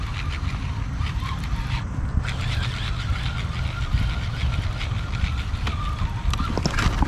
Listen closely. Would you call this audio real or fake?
real